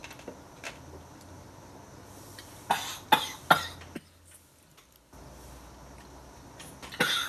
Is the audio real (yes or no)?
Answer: yes